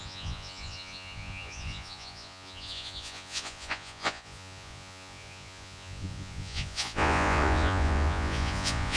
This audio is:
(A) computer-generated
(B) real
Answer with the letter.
A